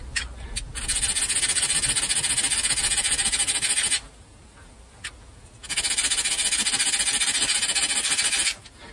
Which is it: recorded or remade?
recorded